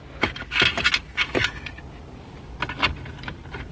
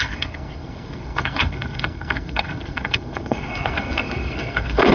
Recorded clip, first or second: first